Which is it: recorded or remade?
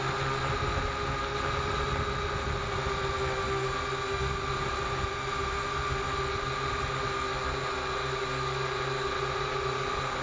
recorded